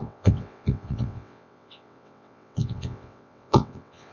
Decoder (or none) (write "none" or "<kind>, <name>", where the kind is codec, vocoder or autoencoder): vocoder, WaveNeXt